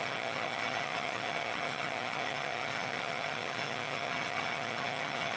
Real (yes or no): no